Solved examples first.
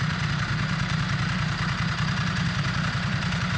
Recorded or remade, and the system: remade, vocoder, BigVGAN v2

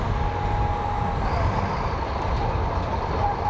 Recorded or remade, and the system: recorded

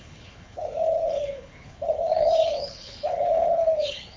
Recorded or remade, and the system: remade, codec, HILCodec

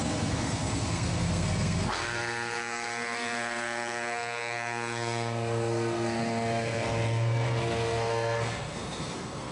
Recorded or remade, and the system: remade, codec, SNAC